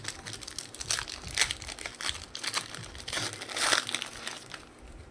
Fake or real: real